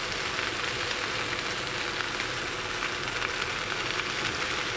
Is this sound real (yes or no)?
yes